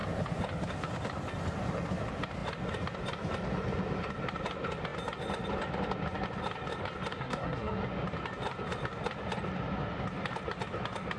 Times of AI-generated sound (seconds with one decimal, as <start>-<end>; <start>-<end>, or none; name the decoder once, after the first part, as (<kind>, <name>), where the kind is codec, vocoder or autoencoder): 7.1-7.8 (codec, SNAC)